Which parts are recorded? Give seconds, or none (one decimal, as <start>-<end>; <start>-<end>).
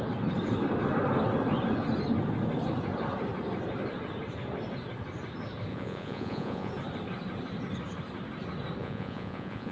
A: 0.0-5.7; 6.7-8.8